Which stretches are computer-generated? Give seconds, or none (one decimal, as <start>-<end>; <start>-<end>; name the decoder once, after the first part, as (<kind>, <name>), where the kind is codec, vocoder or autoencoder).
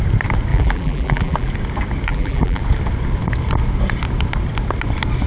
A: 0.5-1.5 (vocoder, BigVGAN v2); 2.1-2.6